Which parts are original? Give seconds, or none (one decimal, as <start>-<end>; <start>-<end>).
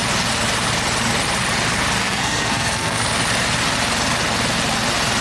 0.0-2.0; 3.0-5.2